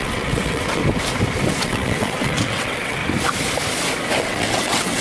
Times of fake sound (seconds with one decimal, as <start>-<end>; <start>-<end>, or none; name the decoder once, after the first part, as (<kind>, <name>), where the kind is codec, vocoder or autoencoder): 0.0-0.8 (vocoder, WaveNeXt); 1.6-3.0; 4.2-5.0